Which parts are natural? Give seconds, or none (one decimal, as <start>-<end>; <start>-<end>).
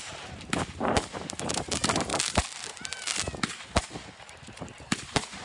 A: 2.1-4.2; 4.9-5.4